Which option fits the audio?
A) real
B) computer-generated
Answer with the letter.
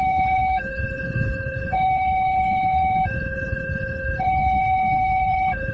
B